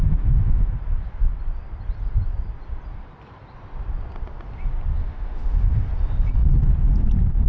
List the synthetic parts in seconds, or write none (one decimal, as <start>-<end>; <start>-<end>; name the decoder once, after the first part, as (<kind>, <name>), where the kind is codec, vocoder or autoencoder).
0.0-0.7 (autoencoder, DAC-VAE); 5.0-5.9